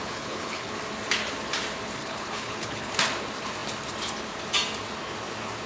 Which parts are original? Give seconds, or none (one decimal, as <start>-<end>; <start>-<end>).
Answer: 0.8-2.0; 2.9-5.7